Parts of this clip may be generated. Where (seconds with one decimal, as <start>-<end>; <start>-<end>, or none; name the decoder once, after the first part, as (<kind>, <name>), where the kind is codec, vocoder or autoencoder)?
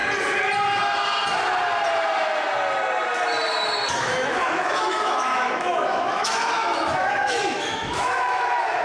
3.9-8.8 (autoencoder, DAC-VAE)